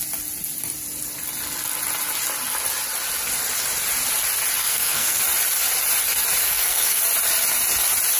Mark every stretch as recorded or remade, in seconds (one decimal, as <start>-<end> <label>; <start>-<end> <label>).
0.0-4.6 recorded; 4.6-5.2 remade; 5.2-6.4 recorded; 6.4-7.0 remade; 7.0-8.2 recorded